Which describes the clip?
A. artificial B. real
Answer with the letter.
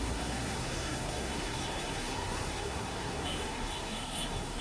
A